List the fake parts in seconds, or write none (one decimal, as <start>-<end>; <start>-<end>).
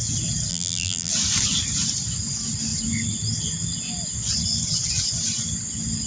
0.5-1.1